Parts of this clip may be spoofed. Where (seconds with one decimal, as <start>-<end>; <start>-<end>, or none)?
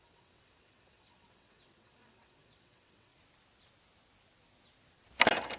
0.0-3.1